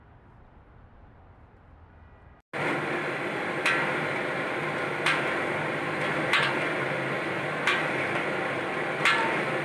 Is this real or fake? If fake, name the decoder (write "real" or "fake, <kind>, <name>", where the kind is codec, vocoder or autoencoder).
real